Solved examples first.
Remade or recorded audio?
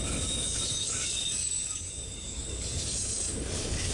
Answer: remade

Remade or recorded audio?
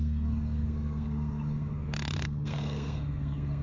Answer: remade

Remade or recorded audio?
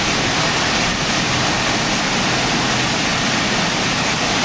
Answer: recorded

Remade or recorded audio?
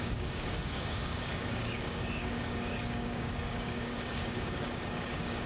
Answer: remade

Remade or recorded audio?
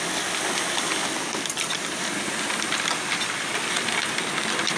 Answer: recorded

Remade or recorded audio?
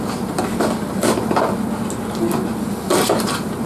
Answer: recorded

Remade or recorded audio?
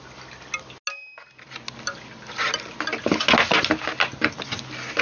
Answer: recorded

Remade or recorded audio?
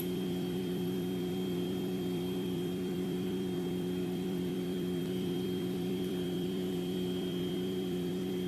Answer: remade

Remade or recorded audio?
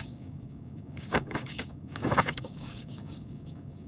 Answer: remade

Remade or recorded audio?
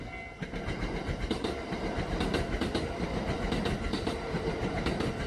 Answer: recorded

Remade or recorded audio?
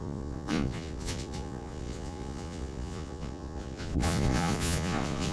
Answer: remade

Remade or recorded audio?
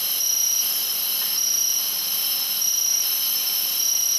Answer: recorded